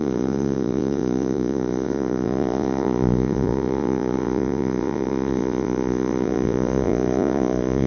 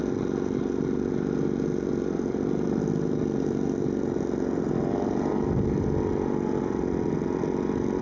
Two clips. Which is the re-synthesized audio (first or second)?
first